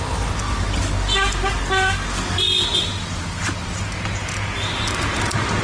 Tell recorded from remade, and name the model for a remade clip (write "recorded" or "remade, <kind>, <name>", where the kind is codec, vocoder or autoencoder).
recorded